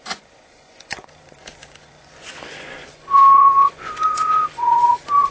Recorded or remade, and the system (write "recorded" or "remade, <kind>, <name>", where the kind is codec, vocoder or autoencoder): remade, vocoder, Vocos